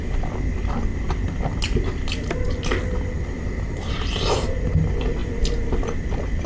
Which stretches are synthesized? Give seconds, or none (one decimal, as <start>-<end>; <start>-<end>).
none